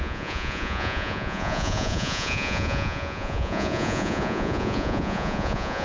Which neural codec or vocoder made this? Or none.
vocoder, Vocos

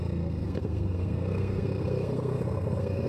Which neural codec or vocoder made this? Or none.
codec, SNAC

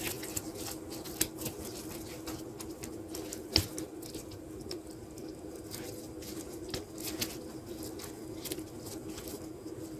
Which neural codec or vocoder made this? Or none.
none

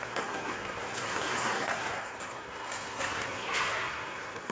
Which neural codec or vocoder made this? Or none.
codec, SNAC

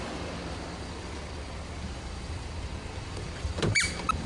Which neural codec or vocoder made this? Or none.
vocoder, BigVGAN v2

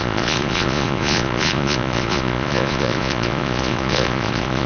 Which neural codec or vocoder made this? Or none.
vocoder, Vocos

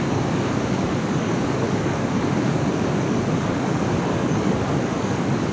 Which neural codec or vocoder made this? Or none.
codec, DAC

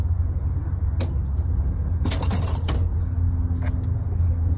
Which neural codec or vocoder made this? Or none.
none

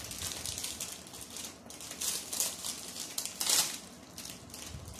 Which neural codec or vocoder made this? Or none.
none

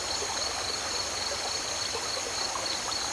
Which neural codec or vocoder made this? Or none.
none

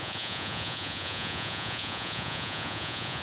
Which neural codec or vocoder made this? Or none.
vocoder, Vocos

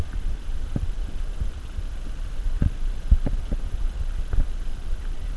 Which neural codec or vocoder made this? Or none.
none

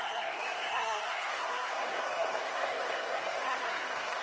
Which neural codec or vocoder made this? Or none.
codec, SNAC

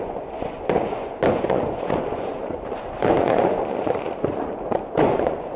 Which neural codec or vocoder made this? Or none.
vocoder, Vocos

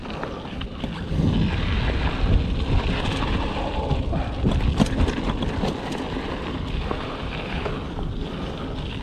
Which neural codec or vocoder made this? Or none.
none